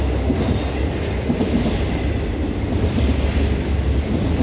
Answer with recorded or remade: recorded